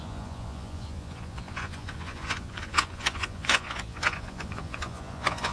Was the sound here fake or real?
fake